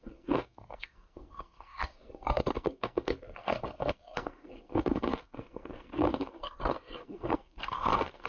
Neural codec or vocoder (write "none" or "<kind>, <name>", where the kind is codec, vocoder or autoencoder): codec, SNAC